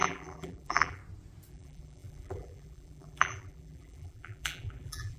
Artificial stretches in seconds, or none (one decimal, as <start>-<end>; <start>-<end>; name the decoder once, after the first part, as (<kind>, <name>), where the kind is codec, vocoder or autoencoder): 0.0-1.0 (vocoder, BigVGAN v2); 1.5-5.2